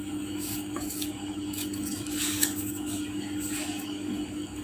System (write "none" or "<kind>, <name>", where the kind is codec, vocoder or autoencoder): codec, DAC